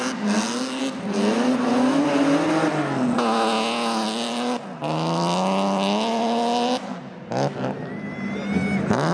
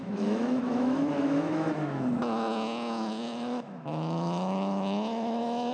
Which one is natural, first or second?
first